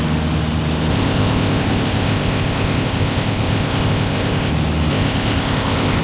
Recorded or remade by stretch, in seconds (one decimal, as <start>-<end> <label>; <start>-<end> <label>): 0.0-0.9 recorded; 0.9-4.5 remade; 4.5-4.9 recorded; 4.9-6.0 remade

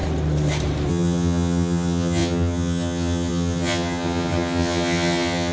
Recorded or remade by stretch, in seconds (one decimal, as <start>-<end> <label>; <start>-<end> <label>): 0.0-0.9 recorded; 0.9-5.5 remade

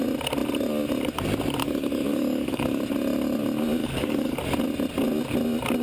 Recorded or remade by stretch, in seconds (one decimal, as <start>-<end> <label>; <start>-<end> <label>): 0.0-1.6 recorded; 1.6-2.8 remade; 2.8-3.8 recorded; 3.8-4.4 remade; 4.4-5.8 recorded

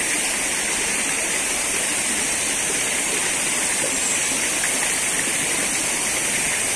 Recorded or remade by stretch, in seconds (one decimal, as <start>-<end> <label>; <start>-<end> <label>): 0.0-6.8 recorded

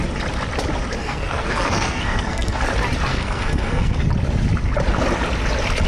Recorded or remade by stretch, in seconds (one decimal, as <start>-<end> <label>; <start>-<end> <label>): 0.0-1.0 recorded; 1.0-2.6 remade; 2.6-3.1 recorded; 3.1-4.1 remade; 4.1-5.9 recorded

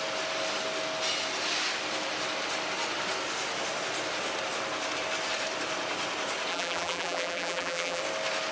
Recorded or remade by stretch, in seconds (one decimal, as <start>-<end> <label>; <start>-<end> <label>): 0.0-6.5 recorded; 6.5-8.0 remade; 8.0-8.5 recorded

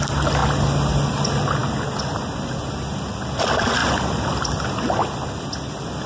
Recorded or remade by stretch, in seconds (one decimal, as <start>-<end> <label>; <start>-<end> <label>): 0.0-6.1 recorded

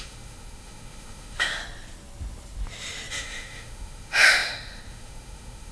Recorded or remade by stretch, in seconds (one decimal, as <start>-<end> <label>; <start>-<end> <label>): 0.0-1.6 remade; 1.6-3.1 recorded; 3.1-5.7 remade